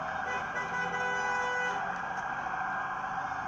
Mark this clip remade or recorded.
recorded